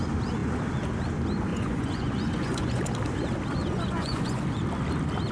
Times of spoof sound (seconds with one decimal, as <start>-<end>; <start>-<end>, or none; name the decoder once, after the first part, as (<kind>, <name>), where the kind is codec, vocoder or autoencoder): 1.5-2.9 (vocoder, Vocos); 3.6-4.4